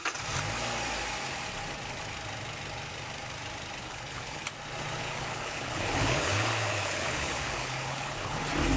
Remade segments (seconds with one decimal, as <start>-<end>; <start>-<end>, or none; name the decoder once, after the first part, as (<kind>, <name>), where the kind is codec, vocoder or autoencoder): 3.8-4.4 (codec, HILCodec); 5.0-8.4